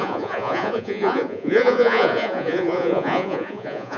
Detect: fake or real fake